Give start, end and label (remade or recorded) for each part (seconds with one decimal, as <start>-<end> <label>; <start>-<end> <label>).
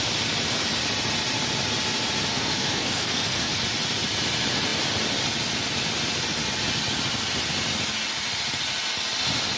0.0-2.3 recorded; 2.3-3.5 remade; 3.5-9.6 recorded